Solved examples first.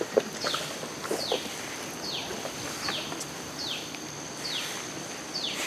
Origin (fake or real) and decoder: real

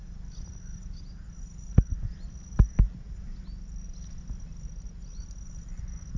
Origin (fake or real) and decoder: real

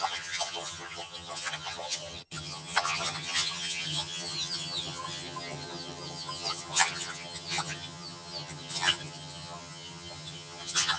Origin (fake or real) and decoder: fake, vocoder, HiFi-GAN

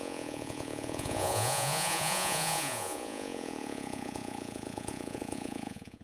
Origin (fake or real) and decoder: fake, vocoder, Vocos